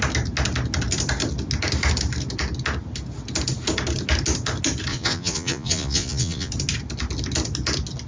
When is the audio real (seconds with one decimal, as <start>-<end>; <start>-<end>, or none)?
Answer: 0.0-4.9; 6.5-8.1